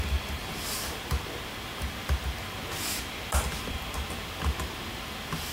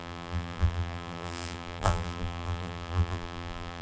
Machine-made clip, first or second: second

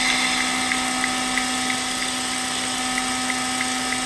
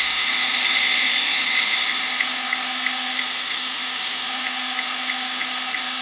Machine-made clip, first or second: second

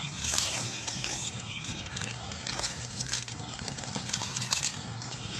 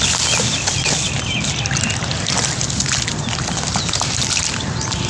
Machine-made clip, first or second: first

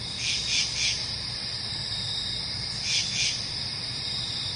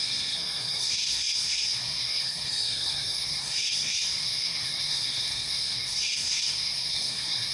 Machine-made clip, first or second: second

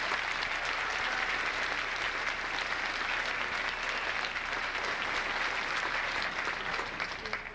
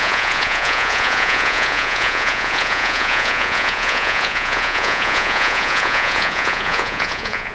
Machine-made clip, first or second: second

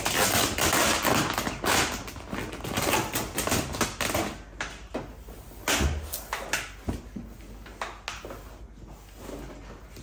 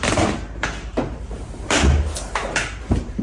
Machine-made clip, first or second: second